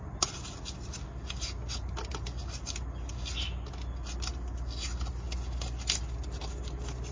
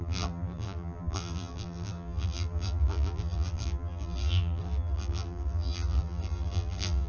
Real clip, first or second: first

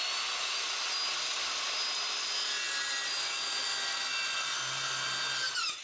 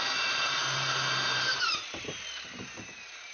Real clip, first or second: first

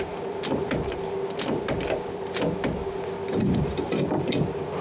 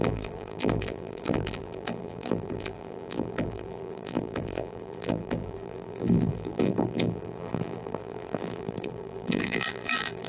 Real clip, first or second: first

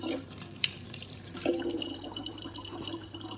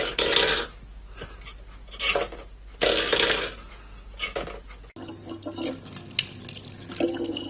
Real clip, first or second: second